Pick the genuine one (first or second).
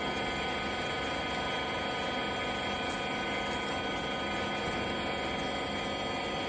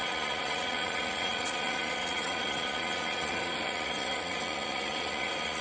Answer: first